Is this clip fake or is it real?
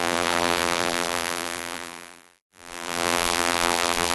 fake